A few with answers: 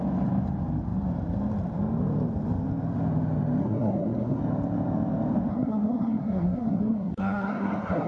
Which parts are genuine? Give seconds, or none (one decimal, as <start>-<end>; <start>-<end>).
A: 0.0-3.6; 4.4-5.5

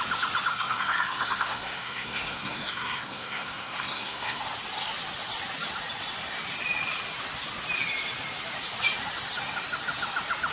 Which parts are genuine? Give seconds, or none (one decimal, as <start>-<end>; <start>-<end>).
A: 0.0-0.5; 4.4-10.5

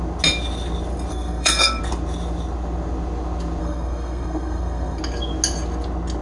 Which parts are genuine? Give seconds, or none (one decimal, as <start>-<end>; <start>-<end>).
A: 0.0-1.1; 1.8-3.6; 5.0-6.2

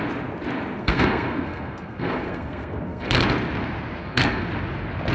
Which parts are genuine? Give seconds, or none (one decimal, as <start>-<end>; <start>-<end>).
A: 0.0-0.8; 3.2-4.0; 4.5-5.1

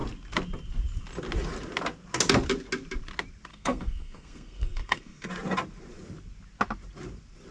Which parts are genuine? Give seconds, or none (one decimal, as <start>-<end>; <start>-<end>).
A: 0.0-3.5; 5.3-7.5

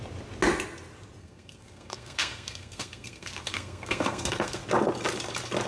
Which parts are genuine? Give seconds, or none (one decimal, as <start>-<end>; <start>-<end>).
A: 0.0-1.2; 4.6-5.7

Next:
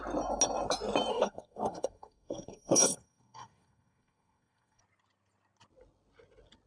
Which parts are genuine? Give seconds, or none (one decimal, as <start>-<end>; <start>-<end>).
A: 0.0-1.1; 4.8-6.7